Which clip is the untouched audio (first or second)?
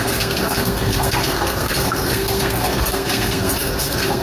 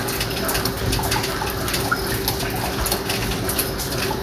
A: second